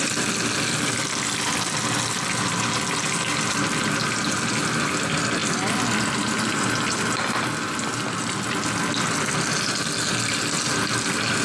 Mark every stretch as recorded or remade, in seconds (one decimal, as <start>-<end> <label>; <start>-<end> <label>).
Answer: 0.0-11.4 recorded